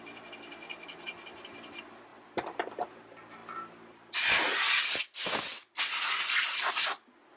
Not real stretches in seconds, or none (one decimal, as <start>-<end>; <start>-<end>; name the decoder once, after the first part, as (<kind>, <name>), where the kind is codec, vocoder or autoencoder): none

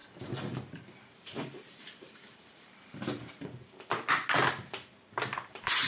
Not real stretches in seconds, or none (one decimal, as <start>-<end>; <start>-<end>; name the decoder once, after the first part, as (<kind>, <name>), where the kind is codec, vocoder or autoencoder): 0.0-4.2 (vocoder, BigVGAN v2); 5.3-5.9

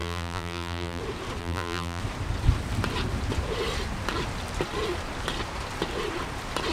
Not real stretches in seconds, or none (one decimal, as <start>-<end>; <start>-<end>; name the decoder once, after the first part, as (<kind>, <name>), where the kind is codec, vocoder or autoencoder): 0.0-1.0 (vocoder, BigVGAN v2); 1.4-2.0

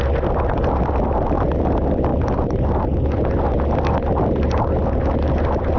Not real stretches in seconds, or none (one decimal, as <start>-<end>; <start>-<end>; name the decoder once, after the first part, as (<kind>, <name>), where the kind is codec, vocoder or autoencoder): 2.1-2.6 (vocoder, BigVGAN v2)

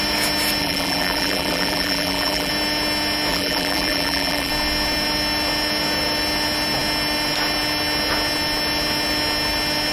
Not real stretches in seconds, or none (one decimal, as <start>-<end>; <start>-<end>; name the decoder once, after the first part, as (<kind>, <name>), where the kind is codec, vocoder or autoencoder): 0.6-2.5 (vocoder, BigVGAN v2); 3.3-4.5

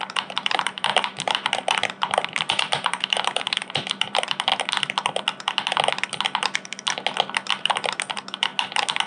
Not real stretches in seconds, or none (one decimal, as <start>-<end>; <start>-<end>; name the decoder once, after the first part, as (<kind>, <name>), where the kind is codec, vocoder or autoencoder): 0.0-4.5 (vocoder, BigVGAN v2); 7.6-8.5

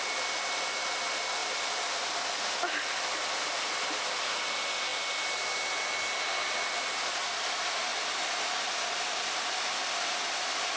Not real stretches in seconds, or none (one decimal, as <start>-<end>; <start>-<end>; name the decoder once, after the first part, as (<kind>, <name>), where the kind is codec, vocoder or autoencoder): 1.4-4.0 (vocoder, BigVGAN v2)